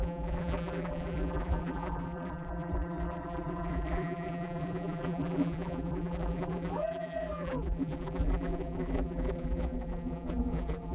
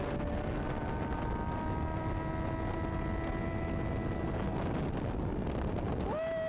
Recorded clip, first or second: second